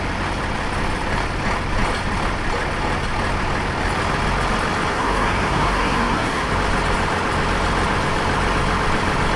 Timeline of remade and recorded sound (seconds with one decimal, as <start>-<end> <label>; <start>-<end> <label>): 0.0-4.9 recorded; 4.9-6.5 remade; 6.5-9.4 recorded